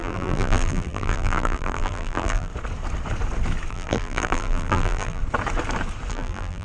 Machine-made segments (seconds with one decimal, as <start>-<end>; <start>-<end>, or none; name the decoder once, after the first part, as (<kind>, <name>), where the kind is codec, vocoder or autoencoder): 0.0-2.5 (vocoder, BigVGAN v2); 3.7-5.2; 6.1-6.6